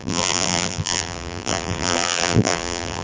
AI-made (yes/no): yes